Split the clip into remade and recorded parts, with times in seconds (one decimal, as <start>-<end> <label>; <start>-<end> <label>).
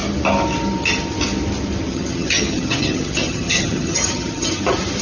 0.0-1.9 recorded; 1.9-4.6 remade; 4.6-5.0 recorded